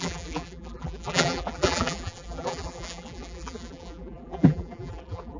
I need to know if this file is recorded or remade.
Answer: remade